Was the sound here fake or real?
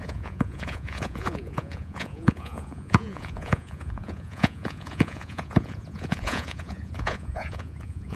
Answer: fake